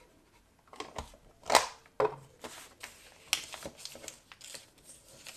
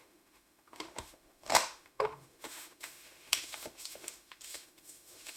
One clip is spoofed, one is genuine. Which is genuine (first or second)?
first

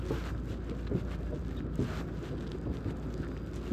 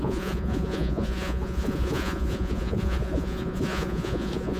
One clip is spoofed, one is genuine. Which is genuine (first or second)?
first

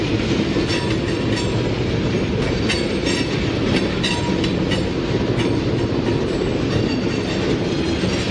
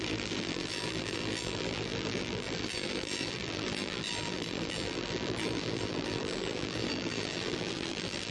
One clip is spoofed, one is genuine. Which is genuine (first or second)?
first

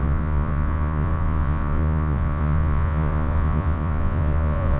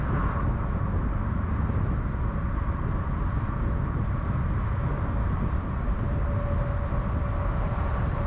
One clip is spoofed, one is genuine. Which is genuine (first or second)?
second